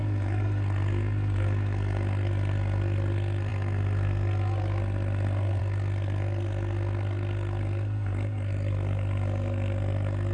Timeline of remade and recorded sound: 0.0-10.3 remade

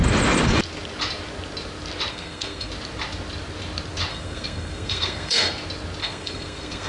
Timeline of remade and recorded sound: 0.0-2.1 recorded; 2.1-2.7 remade; 2.7-4.1 recorded; 4.1-5.5 remade; 5.5-6.0 recorded; 6.0-6.9 remade

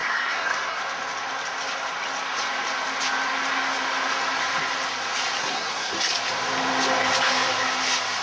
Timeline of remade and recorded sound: 0.0-0.8 remade; 0.8-5.4 recorded; 5.4-5.9 remade; 5.9-8.2 recorded

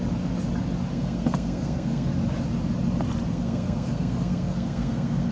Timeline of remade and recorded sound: 0.0-0.9 recorded; 0.9-2.1 remade; 2.1-3.3 recorded; 3.3-5.3 remade

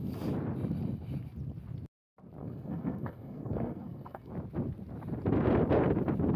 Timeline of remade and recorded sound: 0.0-2.4 recorded; 2.4-4.3 remade; 4.3-6.4 recorded

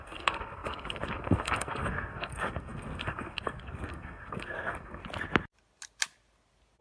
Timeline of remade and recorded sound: 0.0-5.0 remade; 5.0-6.8 recorded

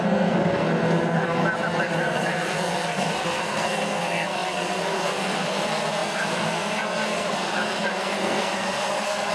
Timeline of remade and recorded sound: 0.0-1.4 remade; 1.4-2.0 recorded; 2.0-9.3 remade

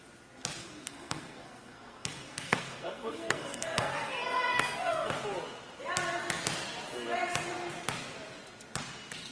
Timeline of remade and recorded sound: 0.0-0.6 recorded; 0.6-5.1 remade; 5.1-9.3 recorded